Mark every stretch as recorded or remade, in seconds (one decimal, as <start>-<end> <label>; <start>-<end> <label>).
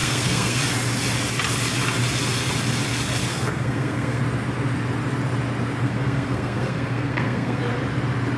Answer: 0.0-0.6 remade; 0.6-3.2 recorded; 3.2-4.2 remade; 4.2-5.8 recorded; 5.8-7.6 remade; 7.6-8.4 recorded